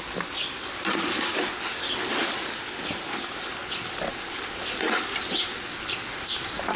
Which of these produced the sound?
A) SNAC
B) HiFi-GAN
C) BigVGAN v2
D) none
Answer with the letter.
D